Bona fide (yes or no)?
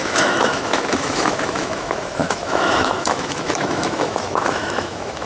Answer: no